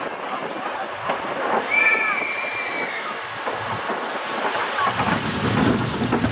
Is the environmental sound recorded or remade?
recorded